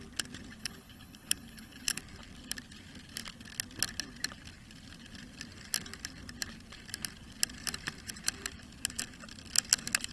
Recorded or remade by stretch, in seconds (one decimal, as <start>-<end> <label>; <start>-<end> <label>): 0.0-0.6 recorded; 0.6-2.0 remade; 2.0-10.1 recorded